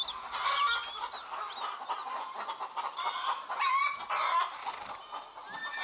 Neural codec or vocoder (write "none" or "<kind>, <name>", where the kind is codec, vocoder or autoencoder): none